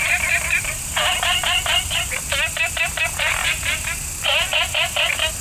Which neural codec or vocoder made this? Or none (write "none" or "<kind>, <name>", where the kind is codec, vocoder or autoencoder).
none